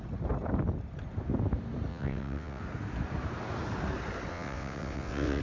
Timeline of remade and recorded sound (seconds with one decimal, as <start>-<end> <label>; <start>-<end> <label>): 0.0-1.9 recorded; 1.9-2.6 remade; 2.6-4.3 recorded; 4.3-5.4 remade